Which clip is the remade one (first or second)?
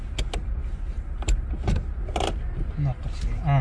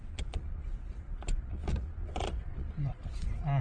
second